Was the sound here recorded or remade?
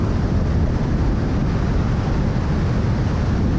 recorded